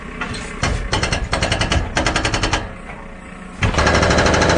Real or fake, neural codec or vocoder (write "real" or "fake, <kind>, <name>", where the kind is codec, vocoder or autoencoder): real